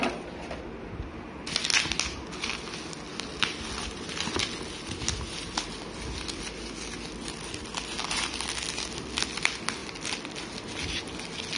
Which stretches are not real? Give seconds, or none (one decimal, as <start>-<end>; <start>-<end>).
none